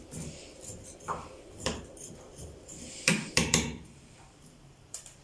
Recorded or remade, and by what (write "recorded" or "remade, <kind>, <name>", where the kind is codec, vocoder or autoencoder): remade, vocoder, BigVGAN v2